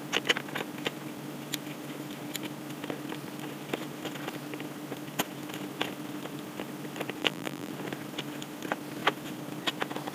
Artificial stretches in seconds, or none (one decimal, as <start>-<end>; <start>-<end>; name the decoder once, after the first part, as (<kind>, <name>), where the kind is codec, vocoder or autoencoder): 7.2-7.7 (vocoder, BigVGAN v2)